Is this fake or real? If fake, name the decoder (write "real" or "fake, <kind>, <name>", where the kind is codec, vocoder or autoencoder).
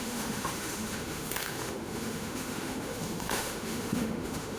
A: fake, autoencoder, DAC-VAE